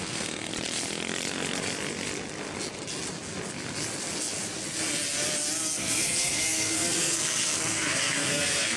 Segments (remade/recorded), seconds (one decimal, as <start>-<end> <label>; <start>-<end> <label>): 0.0-0.5 remade; 0.5-5.8 recorded; 5.8-8.8 remade